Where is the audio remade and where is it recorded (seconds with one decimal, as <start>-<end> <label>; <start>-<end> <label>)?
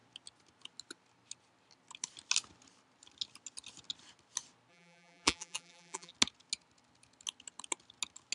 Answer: 0.0-4.7 recorded; 4.7-6.1 remade; 6.1-8.3 recorded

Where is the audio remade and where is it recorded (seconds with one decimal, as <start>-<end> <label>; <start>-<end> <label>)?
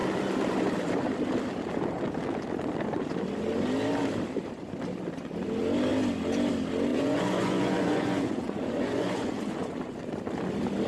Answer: 0.0-6.9 recorded; 6.9-10.0 remade; 10.0-10.9 recorded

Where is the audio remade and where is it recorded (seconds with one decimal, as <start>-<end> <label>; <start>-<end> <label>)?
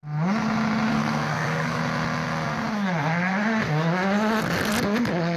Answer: 0.0-0.9 recorded; 0.9-1.8 remade; 1.8-5.4 recorded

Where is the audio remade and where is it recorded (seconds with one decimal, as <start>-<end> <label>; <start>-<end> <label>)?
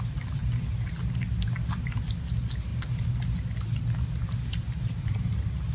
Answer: 0.0-5.7 recorded